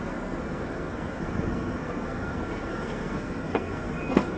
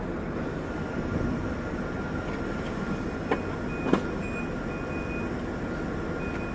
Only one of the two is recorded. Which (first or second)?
second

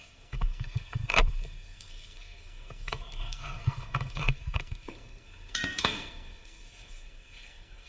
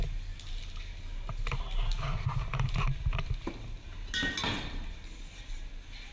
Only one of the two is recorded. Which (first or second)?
second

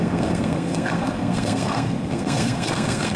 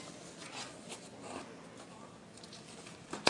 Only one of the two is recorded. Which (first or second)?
second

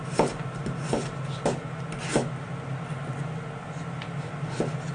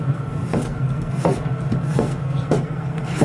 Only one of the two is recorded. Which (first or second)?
first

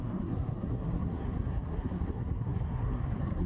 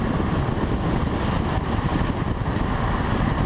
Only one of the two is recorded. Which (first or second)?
second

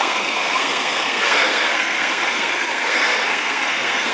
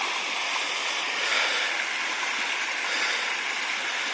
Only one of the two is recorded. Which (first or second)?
second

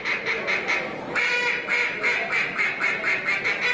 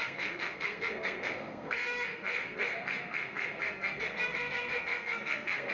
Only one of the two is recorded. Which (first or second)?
first